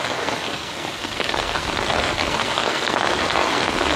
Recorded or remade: remade